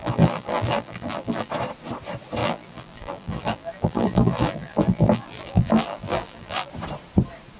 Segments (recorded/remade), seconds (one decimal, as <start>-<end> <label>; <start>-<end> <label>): 0.0-1.5 remade; 1.5-2.4 recorded; 2.4-6.7 remade; 6.7-7.6 recorded